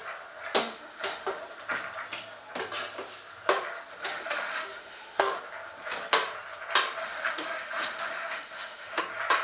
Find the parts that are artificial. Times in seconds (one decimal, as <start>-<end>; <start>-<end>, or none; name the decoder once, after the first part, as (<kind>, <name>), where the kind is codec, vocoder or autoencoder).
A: 0.6-1.4 (autoencoder, DAC-VAE); 4.0-5.4; 7.0-9.0